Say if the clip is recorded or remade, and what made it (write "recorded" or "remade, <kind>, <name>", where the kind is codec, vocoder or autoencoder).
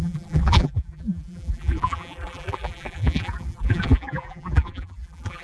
remade, vocoder, BigVGAN v2